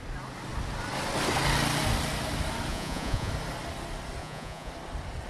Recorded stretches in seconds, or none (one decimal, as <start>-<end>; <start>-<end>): 0.0-2.7; 3.3-4.2; 4.7-5.3

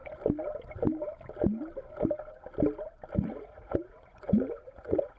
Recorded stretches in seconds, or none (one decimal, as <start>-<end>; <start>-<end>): 0.0-3.1

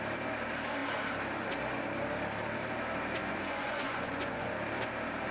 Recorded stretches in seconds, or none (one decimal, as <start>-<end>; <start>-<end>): 0.0-3.2; 4.5-5.3

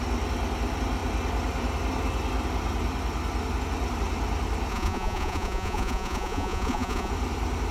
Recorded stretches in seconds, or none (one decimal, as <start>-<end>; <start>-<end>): 0.0-4.7; 7.1-7.7

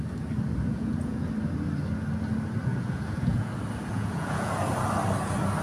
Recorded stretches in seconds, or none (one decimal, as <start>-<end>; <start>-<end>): 0.0-0.7; 1.3-2.7; 3.5-3.9; 4.5-5.6